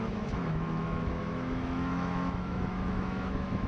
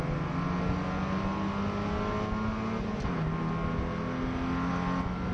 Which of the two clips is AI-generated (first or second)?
first